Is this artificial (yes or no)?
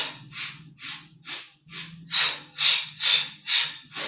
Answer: no